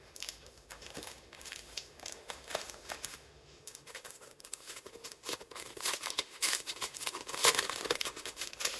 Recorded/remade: remade